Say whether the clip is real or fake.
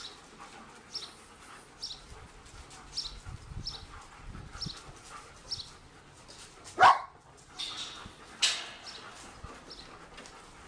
real